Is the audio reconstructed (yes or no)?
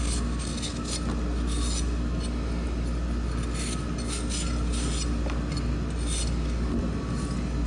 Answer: no